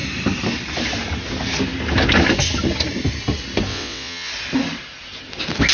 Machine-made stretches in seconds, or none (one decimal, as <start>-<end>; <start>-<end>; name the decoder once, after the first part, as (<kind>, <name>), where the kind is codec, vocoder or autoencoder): 3.7-4.3 (vocoder, WaveNeXt)